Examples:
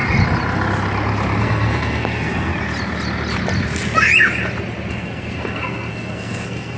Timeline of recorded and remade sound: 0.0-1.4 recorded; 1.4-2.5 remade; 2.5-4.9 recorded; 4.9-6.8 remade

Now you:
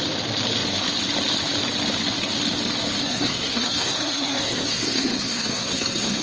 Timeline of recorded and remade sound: 0.0-3.0 recorded; 3.0-6.2 remade

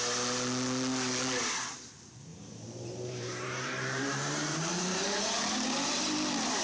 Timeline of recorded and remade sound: 0.0-2.3 recorded; 2.3-6.6 remade

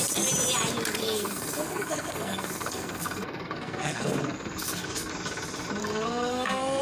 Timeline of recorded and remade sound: 0.0-1.0 recorded; 1.0-5.1 remade; 5.1-5.8 recorded; 5.8-6.8 remade

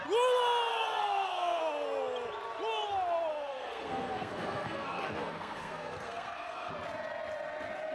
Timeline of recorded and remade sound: 0.0-0.7 recorded; 0.7-1.6 remade; 1.6-3.3 recorded; 3.3-6.7 remade; 6.7-7.9 recorded

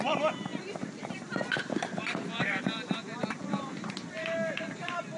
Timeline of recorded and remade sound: 0.0-5.2 remade

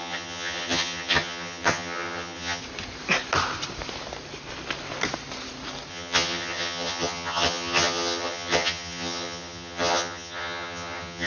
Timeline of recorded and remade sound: 0.0-2.6 remade; 2.6-5.9 recorded; 5.9-11.3 remade

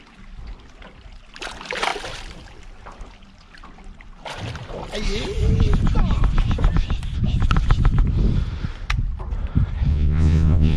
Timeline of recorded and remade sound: 0.0-9.9 recorded; 9.9-10.8 remade